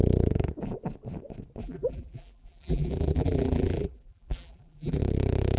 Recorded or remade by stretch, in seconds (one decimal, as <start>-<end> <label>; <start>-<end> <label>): 0.0-1.6 recorded; 1.6-5.0 remade; 5.0-5.6 recorded